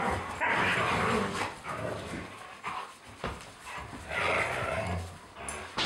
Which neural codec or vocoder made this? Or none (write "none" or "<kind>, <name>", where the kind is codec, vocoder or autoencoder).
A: none